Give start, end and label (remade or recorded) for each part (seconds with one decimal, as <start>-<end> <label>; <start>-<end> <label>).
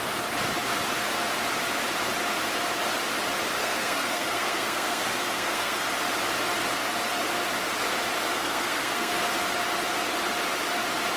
0.0-3.6 recorded; 3.6-5.8 remade; 5.8-8.3 recorded; 8.3-9.1 remade; 9.1-11.2 recorded